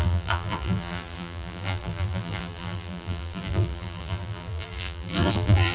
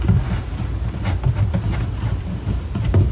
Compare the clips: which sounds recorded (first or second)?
second